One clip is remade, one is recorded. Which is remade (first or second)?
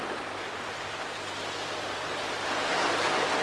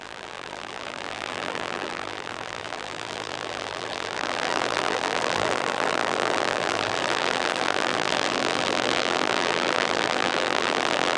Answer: second